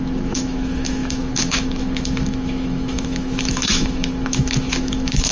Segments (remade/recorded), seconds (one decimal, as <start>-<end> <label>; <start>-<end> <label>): 0.0-5.3 remade